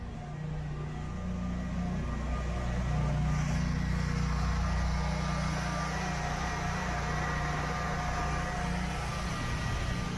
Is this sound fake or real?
real